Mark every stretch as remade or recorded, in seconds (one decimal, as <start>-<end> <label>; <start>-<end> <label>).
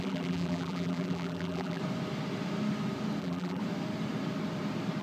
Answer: 0.0-1.8 remade; 1.8-3.2 recorded; 3.2-3.6 remade; 3.6-5.0 recorded